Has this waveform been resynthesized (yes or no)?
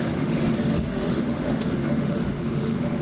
yes